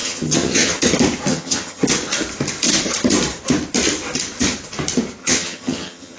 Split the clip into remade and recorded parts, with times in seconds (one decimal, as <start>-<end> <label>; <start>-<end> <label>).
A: 0.0-0.8 remade; 0.8-1.3 recorded; 1.3-1.8 remade; 1.8-5.2 recorded; 5.2-6.2 remade